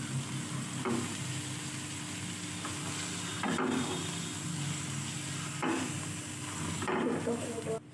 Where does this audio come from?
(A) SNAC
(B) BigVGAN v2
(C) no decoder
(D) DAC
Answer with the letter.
C